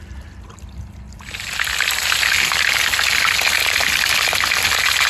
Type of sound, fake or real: real